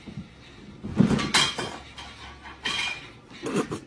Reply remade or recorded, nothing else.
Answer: recorded